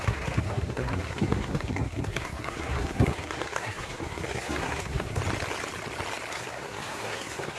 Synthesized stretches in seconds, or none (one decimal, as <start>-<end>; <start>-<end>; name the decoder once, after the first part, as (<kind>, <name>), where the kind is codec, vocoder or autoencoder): 0.0-5.2 (codec, SNAC); 6.3-7.6